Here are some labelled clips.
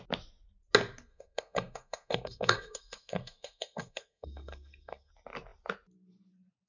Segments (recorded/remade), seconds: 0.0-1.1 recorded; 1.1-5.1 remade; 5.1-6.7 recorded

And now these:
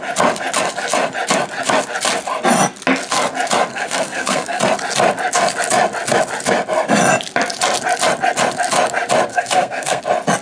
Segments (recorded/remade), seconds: 0.0-3.7 recorded; 3.7-4.6 remade; 4.6-9.3 recorded; 9.3-10.0 remade; 10.0-10.4 recorded

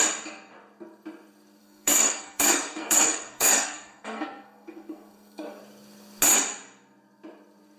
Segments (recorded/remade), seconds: 0.0-1.6 recorded; 1.6-5.6 remade; 5.6-7.8 recorded

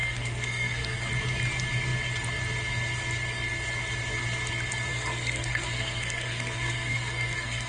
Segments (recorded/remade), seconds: 0.0-1.1 remade; 1.1-4.9 recorded; 4.9-7.7 remade

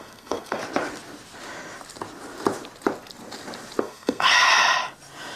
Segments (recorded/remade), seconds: 0.0-0.6 remade; 0.6-3.8 recorded; 3.8-4.6 remade; 4.6-5.4 recorded

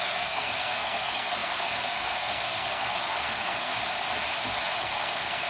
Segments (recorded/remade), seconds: 0.0-3.7 remade; 3.7-4.8 recorded; 4.8-5.5 remade